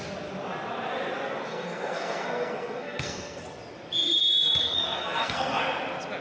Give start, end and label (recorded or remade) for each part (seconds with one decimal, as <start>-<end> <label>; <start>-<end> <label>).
0.0-1.5 recorded; 1.5-3.4 remade; 3.4-4.6 recorded; 4.6-5.6 remade; 5.6-6.2 recorded